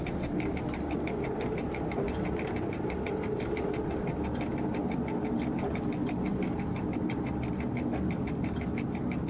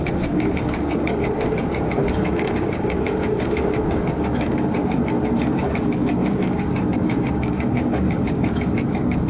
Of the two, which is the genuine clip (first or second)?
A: first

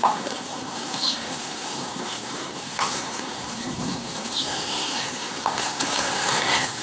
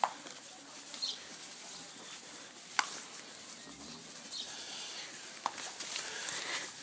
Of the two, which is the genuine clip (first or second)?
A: second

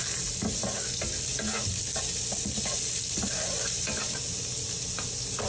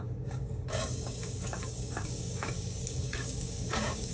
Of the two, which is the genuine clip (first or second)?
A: first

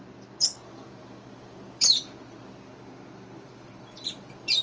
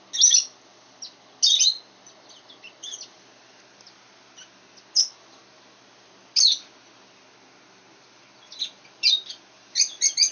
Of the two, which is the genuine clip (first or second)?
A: second